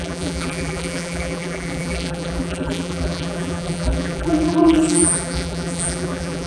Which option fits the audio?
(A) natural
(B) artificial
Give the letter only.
B